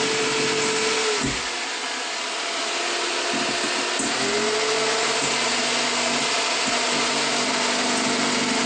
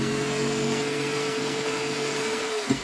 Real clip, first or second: first